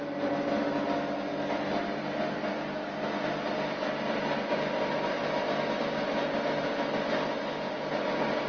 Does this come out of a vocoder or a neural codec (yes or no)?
no